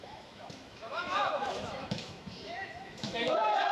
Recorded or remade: remade